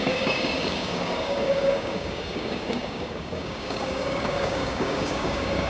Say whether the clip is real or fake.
fake